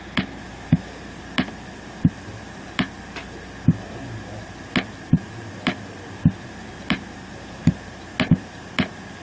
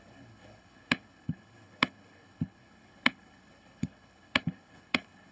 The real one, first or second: first